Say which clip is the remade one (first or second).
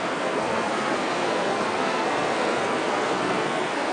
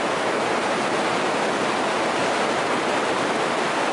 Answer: first